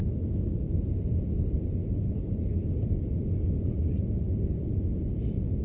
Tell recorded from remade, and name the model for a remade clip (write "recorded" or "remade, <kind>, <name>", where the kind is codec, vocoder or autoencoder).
recorded